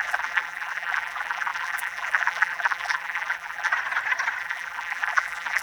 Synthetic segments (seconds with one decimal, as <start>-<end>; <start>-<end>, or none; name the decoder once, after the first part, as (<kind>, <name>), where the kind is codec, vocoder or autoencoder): 0.0-3.7 (vocoder, BigVGAN v2); 4.4-5.6